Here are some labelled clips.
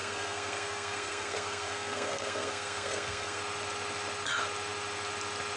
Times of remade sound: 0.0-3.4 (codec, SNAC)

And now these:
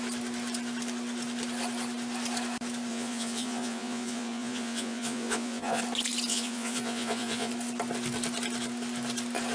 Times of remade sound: 2.9-5.8 (vocoder, Vocos); 6.3-7.5

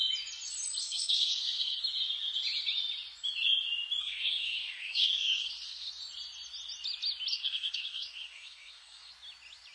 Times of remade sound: 0.8-1.8 (codec, SNAC); 4.0-5.9; 7.3-9.1

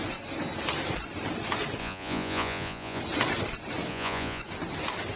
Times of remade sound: 1.8-3.0 (vocoder, Vocos); 3.9-4.4